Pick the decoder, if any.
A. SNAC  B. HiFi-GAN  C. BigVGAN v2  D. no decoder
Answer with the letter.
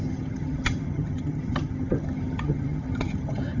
B